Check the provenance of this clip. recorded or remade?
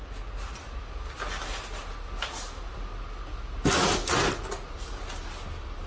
recorded